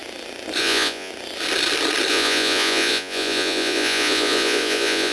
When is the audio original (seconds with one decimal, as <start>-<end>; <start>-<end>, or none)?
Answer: 0.0-0.6; 1.1-2.1